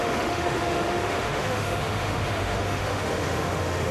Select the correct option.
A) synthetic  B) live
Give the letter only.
A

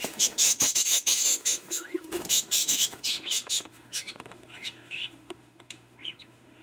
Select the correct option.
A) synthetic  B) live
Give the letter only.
A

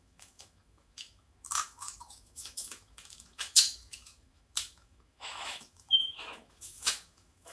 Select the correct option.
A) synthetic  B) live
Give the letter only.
A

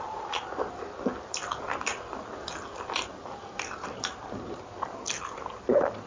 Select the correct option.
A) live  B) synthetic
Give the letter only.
A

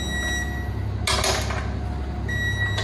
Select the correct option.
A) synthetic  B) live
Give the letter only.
B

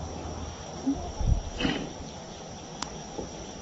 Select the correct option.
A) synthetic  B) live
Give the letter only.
B